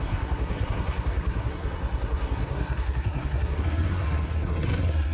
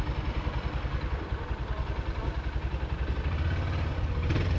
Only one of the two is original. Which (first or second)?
second